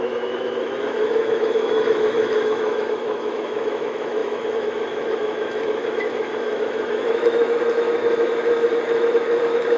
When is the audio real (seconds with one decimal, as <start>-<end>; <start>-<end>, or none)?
none